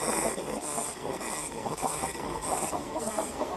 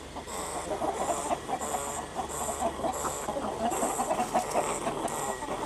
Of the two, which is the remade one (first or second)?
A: first